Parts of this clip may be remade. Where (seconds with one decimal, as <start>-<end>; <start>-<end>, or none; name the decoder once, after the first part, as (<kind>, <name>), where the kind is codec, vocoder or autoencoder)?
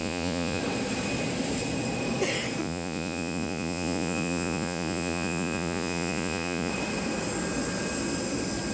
0.0-0.6 (vocoder, Vocos); 2.6-6.7